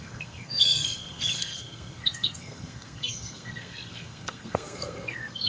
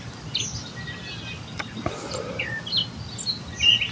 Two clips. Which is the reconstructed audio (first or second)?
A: first